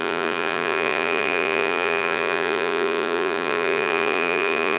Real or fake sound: fake